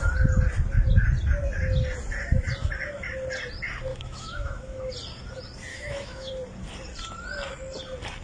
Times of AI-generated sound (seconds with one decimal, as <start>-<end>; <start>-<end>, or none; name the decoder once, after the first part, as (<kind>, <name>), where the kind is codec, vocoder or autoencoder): 3.9-4.9 (autoencoder, DAC-VAE); 5.7-6.3